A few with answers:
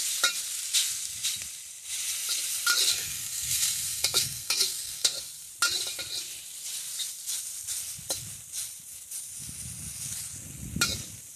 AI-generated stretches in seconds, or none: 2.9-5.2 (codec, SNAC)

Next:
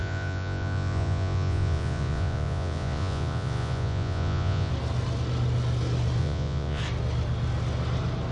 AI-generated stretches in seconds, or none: 0.0-4.7 (vocoder, Vocos); 6.2-6.8

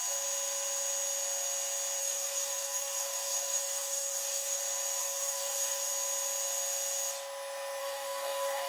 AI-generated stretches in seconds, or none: 2.0-4.6 (codec, DAC); 5.0-5.9; 7.8-8.7

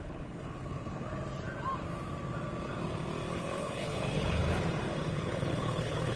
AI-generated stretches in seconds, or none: 0.0-1.1 (codec, HILCodec); 3.3-4.4; 5.1-6.2

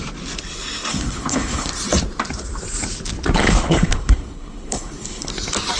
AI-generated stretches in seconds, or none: 0.9-1.7 (codec, HILCodec); 3.4-5.3

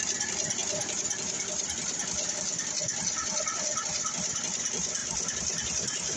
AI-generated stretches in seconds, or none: 0.0-0.6 (vocoder, BigVGAN v2); 3.9-6.2